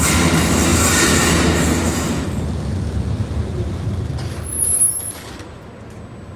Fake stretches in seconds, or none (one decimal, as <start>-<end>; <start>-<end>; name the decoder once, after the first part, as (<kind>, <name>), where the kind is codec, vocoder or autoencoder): none